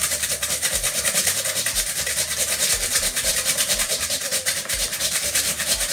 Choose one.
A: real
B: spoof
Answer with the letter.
B